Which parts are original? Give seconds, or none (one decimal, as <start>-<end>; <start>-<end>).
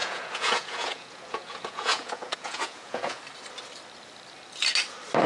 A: 3.2-5.3